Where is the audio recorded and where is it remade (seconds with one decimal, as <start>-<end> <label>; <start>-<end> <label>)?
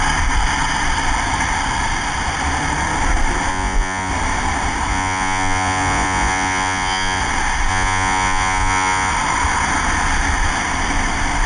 0.0-3.5 recorded; 3.5-4.1 remade; 4.1-4.9 recorded; 4.9-7.2 remade; 7.2-7.7 recorded; 7.7-9.1 remade; 9.1-11.5 recorded